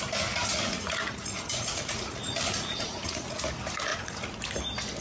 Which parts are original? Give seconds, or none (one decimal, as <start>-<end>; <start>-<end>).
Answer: 0.0-0.5; 3.5-3.9; 4.4-5.0